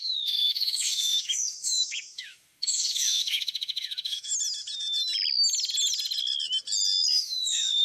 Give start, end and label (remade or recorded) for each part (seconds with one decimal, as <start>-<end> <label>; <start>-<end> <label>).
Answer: 0.0-4.3 remade; 4.3-7.1 recorded; 7.1-7.8 remade